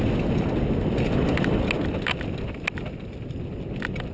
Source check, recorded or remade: recorded